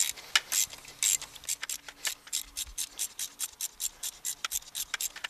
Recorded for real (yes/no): yes